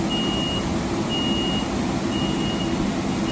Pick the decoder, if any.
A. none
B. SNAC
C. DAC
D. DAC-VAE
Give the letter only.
A